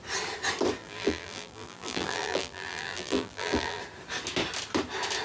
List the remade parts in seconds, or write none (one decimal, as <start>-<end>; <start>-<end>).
0.8-3.8